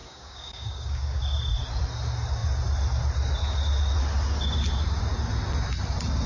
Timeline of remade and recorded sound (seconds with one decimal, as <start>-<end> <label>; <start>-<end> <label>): 0.0-1.2 remade; 1.2-6.3 recorded